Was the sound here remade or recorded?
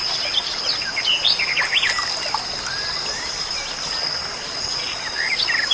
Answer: recorded